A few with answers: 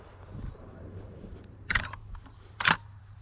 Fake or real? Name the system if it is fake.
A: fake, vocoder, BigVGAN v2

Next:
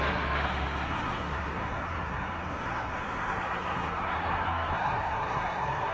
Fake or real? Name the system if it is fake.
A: fake, codec, SNAC